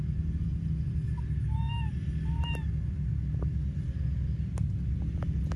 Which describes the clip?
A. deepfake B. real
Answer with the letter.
B